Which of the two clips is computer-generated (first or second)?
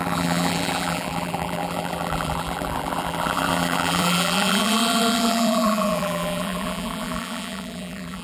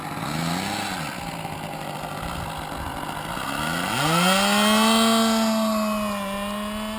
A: first